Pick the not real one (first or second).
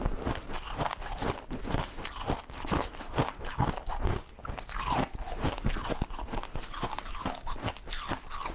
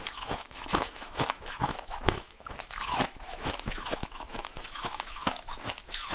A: second